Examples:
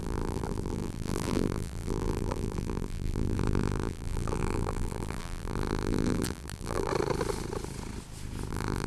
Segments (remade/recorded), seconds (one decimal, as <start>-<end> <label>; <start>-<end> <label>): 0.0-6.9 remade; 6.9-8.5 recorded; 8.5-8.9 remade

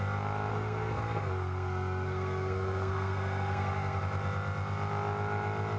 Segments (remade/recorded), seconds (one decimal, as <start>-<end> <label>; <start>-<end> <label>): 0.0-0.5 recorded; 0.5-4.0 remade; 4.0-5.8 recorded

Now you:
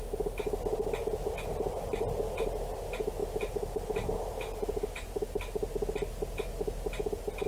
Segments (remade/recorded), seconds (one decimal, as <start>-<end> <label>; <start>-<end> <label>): 0.0-7.5 recorded

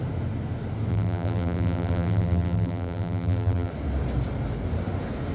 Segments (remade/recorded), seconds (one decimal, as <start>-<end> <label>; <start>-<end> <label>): 0.0-0.9 recorded; 0.9-3.7 remade; 3.7-5.3 recorded

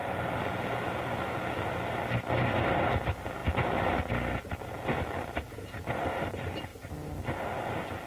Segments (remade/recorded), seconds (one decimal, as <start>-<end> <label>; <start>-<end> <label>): 0.0-2.3 recorded; 2.3-3.4 remade; 3.4-5.0 recorded; 5.0-6.7 remade; 6.7-8.1 recorded